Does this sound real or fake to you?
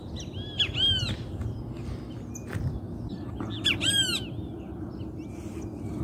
real